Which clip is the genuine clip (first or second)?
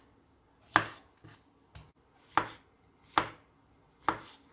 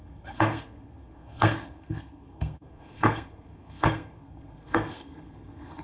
first